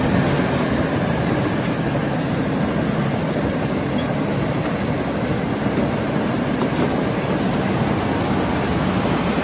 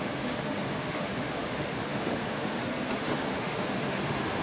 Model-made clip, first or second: second